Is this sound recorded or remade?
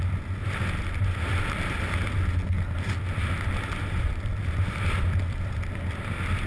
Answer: recorded